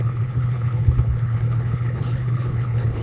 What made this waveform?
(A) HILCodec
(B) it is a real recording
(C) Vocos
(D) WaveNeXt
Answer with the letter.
A